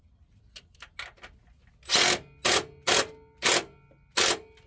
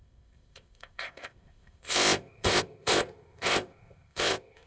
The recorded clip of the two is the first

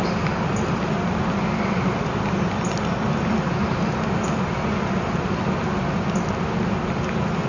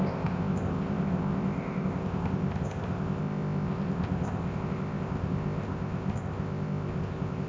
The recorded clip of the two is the first